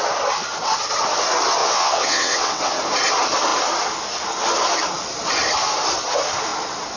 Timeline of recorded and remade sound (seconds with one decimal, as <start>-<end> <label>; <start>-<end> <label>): 0.0-1.6 recorded; 1.6-2.6 remade; 2.6-7.0 recorded